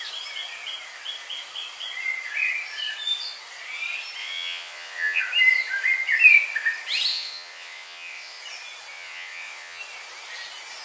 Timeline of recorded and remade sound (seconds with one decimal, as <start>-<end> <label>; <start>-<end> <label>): 0.0-4.2 recorded; 4.2-5.2 remade; 5.2-7.1 recorded; 7.1-8.4 remade; 8.4-8.9 recorded; 8.9-9.8 remade; 9.8-10.8 recorded